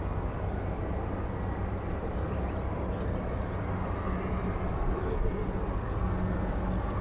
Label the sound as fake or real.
real